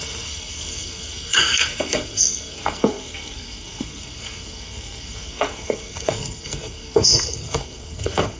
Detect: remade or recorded remade